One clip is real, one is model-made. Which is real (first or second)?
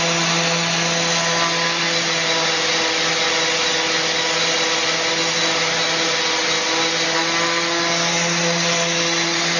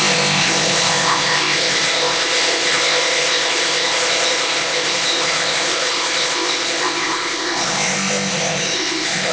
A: first